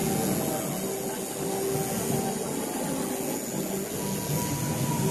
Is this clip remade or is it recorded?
recorded